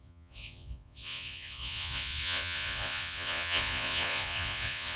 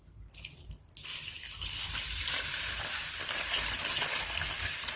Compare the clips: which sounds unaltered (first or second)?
second